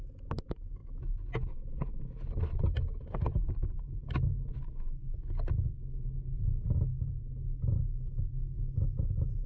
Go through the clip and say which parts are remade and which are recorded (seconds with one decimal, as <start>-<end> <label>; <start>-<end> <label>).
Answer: 0.0-9.5 recorded